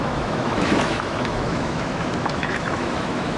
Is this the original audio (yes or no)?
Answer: no